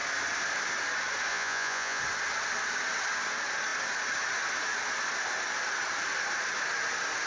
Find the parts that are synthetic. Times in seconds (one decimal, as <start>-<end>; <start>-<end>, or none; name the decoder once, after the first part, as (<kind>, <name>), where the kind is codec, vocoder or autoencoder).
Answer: 1.3-2.0 (vocoder, Vocos)